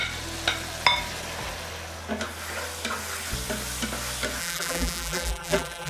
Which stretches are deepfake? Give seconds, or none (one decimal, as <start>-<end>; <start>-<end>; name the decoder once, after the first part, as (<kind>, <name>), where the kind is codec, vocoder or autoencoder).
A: 4.4-5.9 (vocoder, BigVGAN v2)